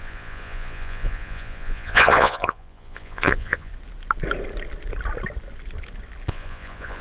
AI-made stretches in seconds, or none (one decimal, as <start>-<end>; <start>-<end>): 0.0-3.7; 6.3-7.0